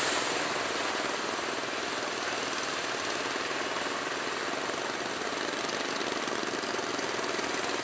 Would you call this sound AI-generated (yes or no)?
no